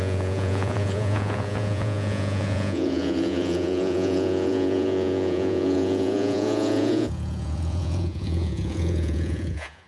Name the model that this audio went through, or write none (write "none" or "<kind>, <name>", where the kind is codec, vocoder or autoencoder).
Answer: vocoder, Vocos